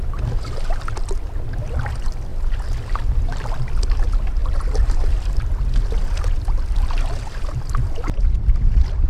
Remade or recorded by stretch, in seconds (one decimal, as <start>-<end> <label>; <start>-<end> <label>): 0.0-9.1 recorded